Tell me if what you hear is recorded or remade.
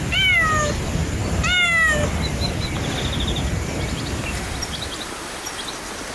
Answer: recorded